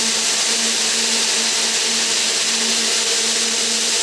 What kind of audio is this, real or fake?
real